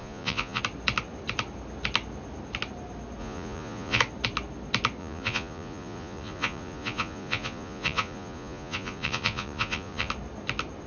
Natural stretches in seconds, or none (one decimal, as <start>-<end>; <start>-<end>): 0.6-3.2; 4.0-5.0; 10.1-10.9